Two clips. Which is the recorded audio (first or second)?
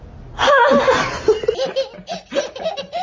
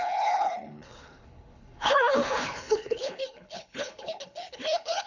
first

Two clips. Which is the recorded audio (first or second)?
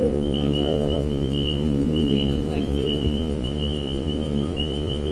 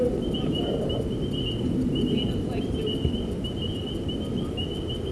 second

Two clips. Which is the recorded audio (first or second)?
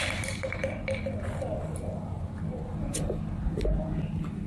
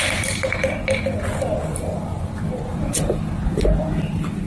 first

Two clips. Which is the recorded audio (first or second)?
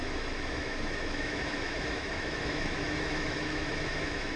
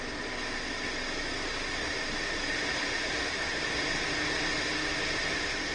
second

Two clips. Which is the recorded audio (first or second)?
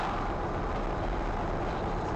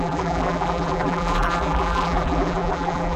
first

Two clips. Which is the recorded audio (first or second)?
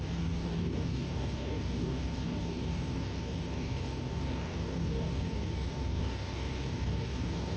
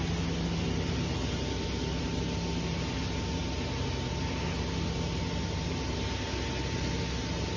second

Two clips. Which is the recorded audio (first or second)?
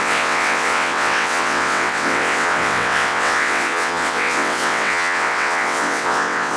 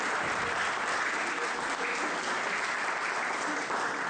second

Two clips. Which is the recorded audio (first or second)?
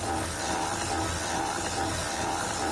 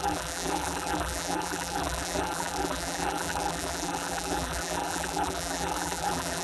first